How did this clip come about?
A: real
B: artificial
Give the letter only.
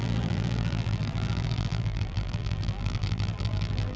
B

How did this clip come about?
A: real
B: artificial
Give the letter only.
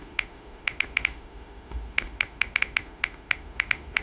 B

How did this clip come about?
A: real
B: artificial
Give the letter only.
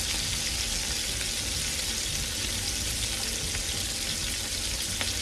A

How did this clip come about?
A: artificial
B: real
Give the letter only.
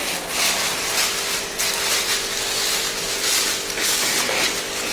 B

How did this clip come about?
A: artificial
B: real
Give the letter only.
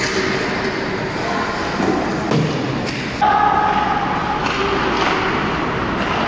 B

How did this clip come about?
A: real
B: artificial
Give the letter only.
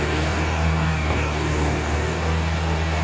B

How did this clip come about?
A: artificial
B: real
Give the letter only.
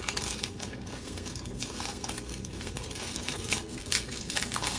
A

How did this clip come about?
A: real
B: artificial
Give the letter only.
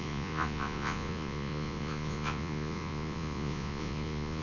B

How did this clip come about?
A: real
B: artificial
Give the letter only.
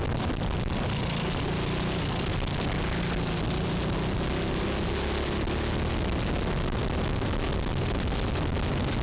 A